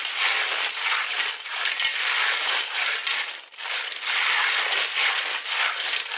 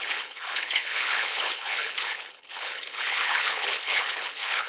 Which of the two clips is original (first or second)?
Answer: first